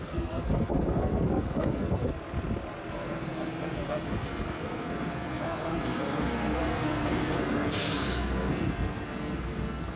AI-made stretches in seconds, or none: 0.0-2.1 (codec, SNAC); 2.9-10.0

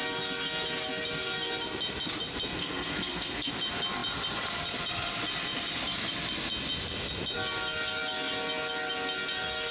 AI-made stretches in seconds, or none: 2.6-3.5 (codec, SNAC)

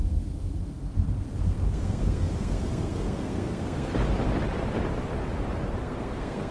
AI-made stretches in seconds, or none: 0.0-3.9 (codec, SNAC); 5.8-6.5

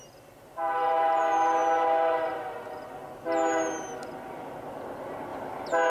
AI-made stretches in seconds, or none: none

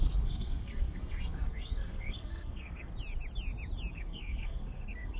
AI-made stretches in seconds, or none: 0.0-2.9 (codec, SNAC); 3.9-5.2

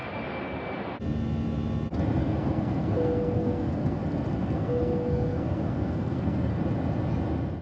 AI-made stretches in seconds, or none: 2.2-4.0 (codec, SNAC); 4.4-6.6

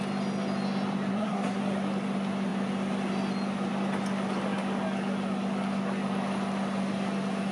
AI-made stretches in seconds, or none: 1.1-1.6 (codec, SNAC)